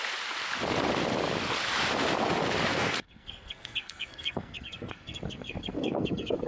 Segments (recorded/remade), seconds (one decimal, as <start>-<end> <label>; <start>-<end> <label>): 0.0-2.7 recorded; 2.7-6.5 remade